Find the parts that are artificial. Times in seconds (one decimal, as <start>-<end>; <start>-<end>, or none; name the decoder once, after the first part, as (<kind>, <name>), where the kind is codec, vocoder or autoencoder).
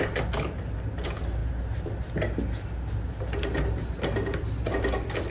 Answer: none